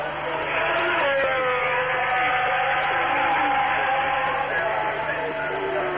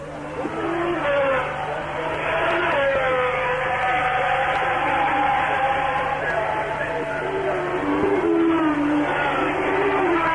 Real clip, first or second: first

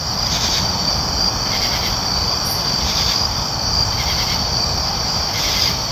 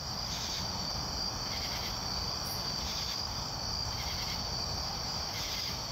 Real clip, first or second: second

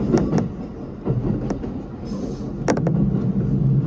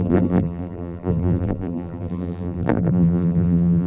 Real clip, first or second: first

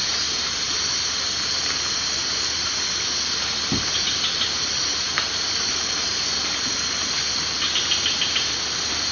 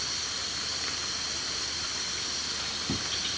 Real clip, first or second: first